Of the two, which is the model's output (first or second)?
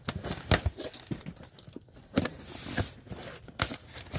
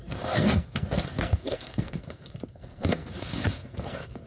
second